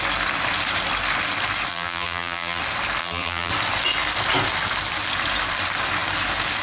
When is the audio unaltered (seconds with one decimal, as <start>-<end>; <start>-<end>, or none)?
0.0-1.7; 2.6-3.0; 3.5-6.6